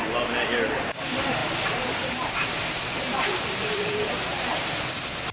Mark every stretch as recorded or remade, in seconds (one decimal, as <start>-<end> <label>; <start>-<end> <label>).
0.0-1.4 recorded; 1.4-4.6 remade; 4.6-5.3 recorded